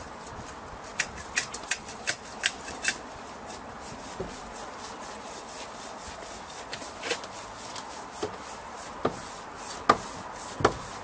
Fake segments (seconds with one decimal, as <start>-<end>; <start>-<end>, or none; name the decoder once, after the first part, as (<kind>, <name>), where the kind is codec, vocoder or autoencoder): none

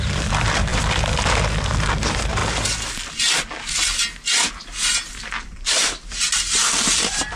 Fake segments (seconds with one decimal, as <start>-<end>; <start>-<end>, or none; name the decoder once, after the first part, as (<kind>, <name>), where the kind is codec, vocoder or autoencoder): 0.0-2.4 (vocoder, BigVGAN v2); 5.1-7.3

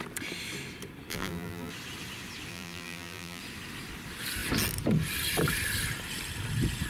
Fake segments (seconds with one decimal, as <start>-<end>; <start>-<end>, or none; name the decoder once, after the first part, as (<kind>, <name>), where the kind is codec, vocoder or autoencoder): 1.1-1.7 (vocoder, BigVGAN v2); 2.5-3.4